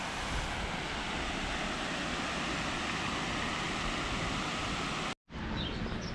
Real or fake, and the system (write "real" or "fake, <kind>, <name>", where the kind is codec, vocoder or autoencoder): real